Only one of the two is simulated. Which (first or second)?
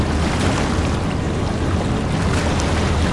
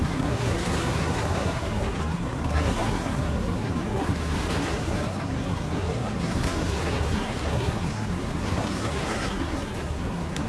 second